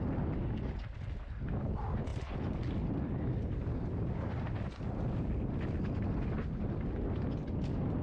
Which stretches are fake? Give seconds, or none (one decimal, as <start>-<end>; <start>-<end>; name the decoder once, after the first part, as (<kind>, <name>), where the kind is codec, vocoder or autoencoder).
none